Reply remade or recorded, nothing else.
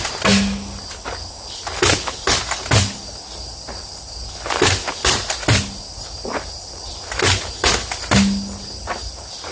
recorded